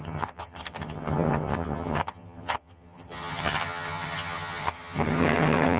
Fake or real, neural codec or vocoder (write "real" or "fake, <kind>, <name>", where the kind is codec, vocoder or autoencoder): fake, vocoder, HiFi-GAN